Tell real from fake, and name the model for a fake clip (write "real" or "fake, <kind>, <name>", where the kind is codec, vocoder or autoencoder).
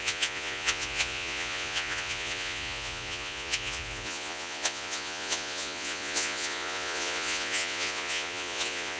fake, vocoder, Vocos